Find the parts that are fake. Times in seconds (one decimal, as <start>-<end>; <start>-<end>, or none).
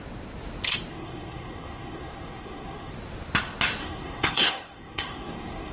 0.9-2.9; 3.8-5.7